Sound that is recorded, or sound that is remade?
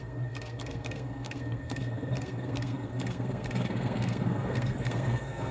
remade